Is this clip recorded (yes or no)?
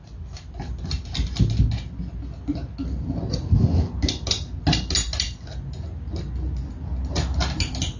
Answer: yes